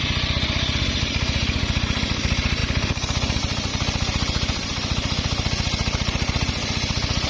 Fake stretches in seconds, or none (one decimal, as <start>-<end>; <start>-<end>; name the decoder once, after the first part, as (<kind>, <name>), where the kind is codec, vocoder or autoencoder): none